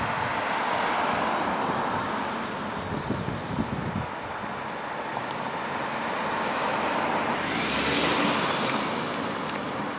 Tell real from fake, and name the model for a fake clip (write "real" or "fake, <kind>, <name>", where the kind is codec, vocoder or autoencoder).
real